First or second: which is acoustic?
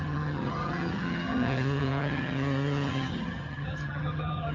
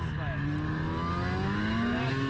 second